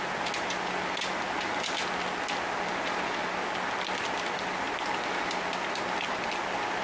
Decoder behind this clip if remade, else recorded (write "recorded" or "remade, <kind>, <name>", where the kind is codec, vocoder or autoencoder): recorded